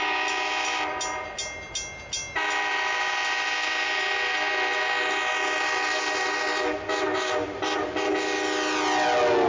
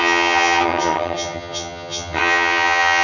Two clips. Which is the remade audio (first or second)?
second